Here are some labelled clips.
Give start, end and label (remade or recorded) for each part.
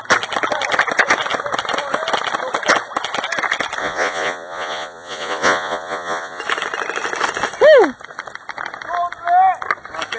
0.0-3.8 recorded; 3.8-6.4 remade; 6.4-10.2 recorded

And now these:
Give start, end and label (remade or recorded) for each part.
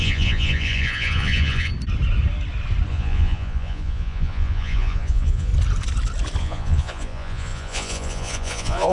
0.0-1.7 remade; 1.7-2.9 recorded; 2.9-5.5 remade; 5.5-6.4 recorded; 6.4-8.9 remade